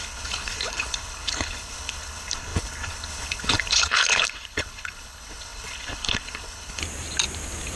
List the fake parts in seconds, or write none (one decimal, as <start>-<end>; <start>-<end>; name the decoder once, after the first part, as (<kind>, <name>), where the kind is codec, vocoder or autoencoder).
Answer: 0.0-6.8 (codec, HILCodec)